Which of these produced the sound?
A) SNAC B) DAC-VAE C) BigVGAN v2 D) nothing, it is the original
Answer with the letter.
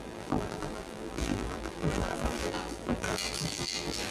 C